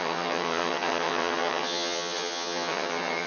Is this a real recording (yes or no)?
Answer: no